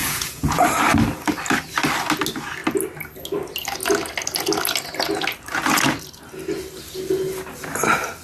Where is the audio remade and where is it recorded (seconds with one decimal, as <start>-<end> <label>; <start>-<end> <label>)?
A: 0.0-0.6 remade; 0.6-8.2 recorded

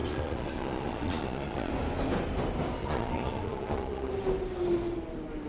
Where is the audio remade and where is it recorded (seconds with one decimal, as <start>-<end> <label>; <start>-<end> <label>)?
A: 0.0-1.7 remade; 1.7-2.8 recorded; 2.8-4.1 remade; 4.1-5.5 recorded

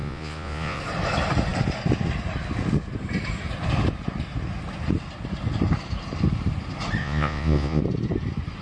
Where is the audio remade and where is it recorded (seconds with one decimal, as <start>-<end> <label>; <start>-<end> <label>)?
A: 0.0-0.8 remade; 0.8-7.0 recorded; 7.0-7.8 remade; 7.8-8.6 recorded

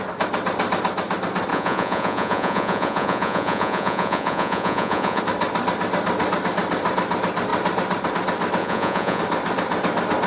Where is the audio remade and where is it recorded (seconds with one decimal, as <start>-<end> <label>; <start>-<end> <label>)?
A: 0.0-1.5 recorded; 1.5-5.2 remade; 5.2-8.6 recorded; 8.6-9.2 remade; 9.2-10.3 recorded

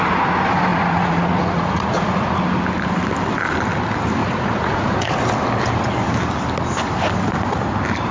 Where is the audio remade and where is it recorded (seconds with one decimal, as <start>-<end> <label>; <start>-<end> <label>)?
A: 0.0-0.7 recorded; 0.7-2.4 remade; 2.4-4.2 recorded; 4.2-5.2 remade; 5.2-8.1 recorded

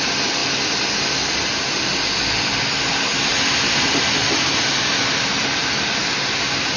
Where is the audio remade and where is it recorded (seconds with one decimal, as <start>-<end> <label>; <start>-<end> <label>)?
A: 0.0-6.8 recorded

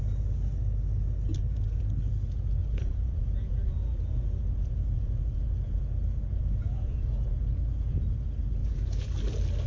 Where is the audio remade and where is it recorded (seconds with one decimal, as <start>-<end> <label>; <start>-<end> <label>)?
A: 0.0-1.3 recorded; 1.3-1.8 remade; 1.8-2.6 recorded; 2.6-5.8 remade; 5.8-6.3 recorded; 6.3-8.0 remade; 8.0-8.6 recorded; 8.6-9.1 remade; 9.1-9.7 recorded